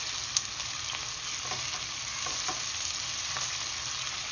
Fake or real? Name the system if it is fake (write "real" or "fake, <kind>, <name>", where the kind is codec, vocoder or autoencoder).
real